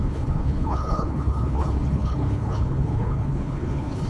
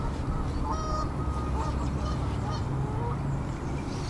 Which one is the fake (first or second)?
first